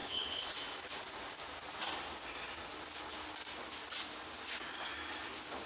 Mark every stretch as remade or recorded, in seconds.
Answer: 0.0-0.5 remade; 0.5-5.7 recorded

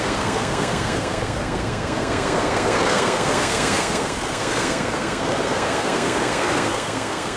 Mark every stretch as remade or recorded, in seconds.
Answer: 0.0-7.4 remade

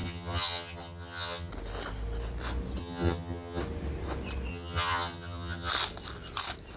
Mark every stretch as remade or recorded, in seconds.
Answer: 0.0-1.5 remade; 1.5-2.8 recorded; 2.8-3.6 remade; 3.6-4.5 recorded; 4.5-5.7 remade; 5.7-6.8 recorded